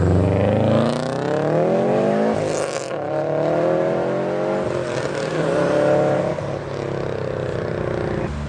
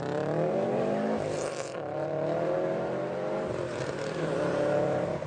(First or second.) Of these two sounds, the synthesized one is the second